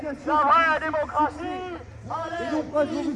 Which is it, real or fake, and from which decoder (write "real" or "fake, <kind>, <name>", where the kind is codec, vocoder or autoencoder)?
real